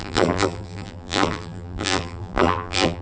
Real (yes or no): no